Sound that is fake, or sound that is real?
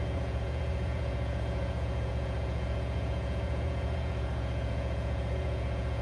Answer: fake